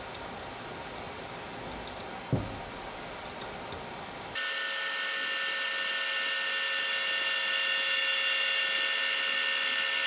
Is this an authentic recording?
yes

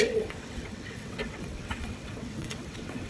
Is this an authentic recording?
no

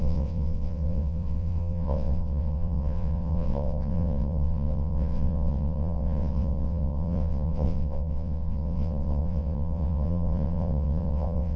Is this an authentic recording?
no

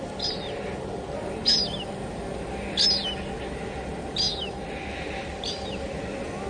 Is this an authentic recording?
yes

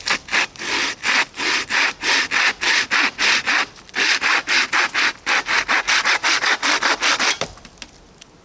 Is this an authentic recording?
yes